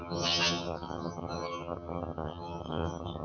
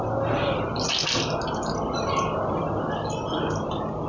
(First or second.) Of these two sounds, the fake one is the first